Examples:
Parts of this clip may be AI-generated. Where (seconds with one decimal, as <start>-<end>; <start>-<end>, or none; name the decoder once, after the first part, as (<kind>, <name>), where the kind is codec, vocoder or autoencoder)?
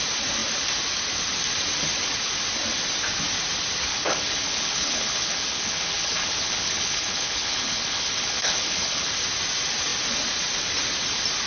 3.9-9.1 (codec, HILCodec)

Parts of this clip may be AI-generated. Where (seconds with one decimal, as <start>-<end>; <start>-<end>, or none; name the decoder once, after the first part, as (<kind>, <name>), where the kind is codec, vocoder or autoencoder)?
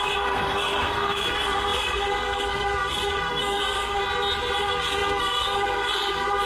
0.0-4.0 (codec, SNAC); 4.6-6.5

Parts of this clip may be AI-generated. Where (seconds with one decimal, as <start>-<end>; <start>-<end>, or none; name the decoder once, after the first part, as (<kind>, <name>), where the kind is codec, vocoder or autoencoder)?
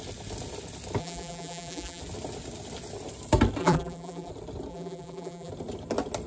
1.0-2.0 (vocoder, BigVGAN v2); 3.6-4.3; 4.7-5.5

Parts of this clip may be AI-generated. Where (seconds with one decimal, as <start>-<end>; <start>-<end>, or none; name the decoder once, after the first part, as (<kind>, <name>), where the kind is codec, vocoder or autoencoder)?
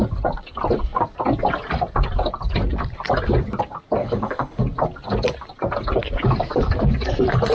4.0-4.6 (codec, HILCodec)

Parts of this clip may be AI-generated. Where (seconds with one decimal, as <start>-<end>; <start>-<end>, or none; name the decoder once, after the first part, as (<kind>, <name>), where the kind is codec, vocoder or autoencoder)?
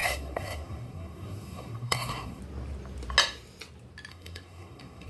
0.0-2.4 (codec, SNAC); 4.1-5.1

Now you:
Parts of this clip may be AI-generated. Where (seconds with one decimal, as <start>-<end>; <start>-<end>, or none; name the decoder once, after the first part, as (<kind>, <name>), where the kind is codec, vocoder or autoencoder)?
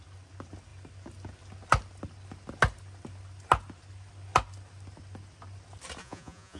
6.0-6.6 (vocoder, Vocos)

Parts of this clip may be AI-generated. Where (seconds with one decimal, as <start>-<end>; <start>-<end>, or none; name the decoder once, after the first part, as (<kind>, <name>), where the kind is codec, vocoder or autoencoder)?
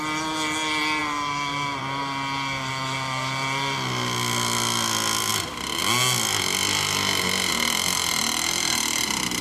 none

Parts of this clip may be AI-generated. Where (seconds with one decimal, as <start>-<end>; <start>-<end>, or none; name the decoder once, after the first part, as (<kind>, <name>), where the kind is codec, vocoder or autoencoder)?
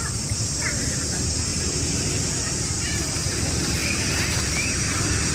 0.0-3.8 (vocoder, BigVGAN v2); 4.6-5.3